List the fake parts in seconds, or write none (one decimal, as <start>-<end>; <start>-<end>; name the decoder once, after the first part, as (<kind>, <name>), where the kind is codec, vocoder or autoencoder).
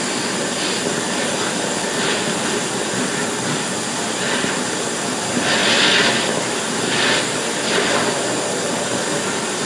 none